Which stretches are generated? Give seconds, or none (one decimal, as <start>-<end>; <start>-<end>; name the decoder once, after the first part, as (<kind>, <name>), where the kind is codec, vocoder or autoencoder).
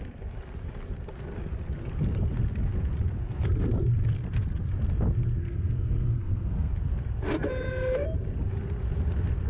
5.4-6.7 (codec, SNAC)